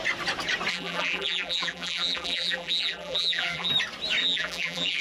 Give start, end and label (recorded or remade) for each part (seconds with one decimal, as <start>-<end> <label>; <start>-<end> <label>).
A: 0.0-0.7 recorded; 0.7-3.7 remade; 3.7-4.2 recorded; 4.2-5.0 remade